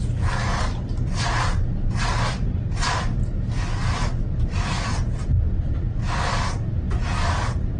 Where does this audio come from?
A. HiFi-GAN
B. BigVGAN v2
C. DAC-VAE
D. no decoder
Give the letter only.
D